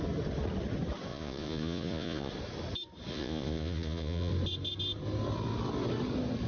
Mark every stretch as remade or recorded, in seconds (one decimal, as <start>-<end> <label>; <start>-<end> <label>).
0.0-1.1 recorded; 1.1-2.3 remade; 2.3-3.1 recorded; 3.1-4.3 remade; 4.3-6.5 recorded